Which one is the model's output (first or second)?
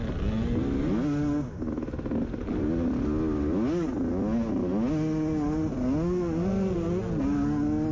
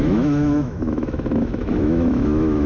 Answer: second